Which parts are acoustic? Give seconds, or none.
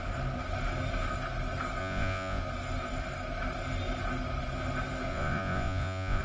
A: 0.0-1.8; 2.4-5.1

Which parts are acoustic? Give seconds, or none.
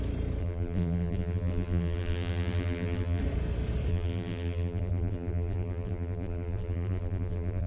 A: 0.0-0.4; 3.2-3.9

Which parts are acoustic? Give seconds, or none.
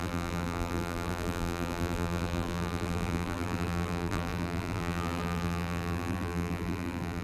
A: none